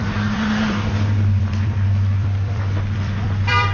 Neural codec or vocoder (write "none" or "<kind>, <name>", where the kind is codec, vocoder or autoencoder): vocoder, BigVGAN v2